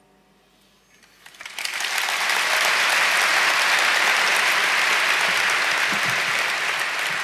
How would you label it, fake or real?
real